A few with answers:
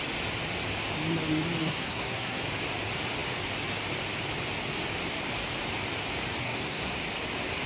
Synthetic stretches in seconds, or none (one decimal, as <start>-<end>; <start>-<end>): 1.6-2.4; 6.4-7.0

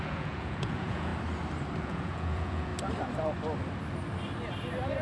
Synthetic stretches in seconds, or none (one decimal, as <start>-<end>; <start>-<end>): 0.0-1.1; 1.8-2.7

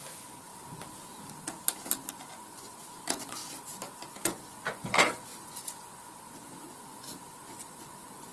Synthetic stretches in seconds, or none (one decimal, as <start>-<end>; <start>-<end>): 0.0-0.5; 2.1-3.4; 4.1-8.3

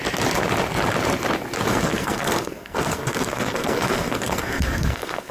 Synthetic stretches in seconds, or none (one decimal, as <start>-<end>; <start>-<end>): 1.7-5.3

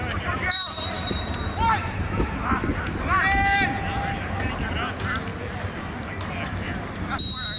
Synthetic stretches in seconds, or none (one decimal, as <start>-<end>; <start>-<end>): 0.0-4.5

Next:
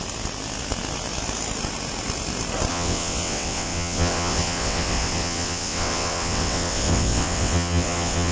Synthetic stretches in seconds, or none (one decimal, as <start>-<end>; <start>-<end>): 2.7-8.3

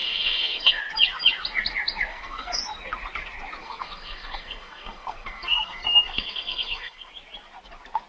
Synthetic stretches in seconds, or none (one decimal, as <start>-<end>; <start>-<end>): 0.0-0.8; 2.1-2.6; 3.6-7.1